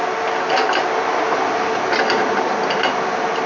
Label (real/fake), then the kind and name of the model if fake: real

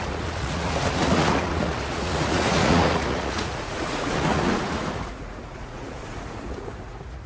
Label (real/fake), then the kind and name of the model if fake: fake, vocoder, Vocos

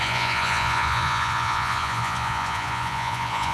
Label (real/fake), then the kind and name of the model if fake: fake, vocoder, Vocos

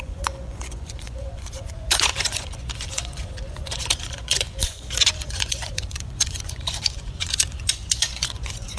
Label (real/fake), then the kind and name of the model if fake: fake, vocoder, Vocos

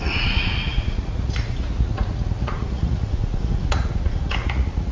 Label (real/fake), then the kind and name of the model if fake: fake, vocoder, Vocos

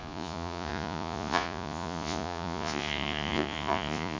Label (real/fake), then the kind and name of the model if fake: fake, vocoder, Vocos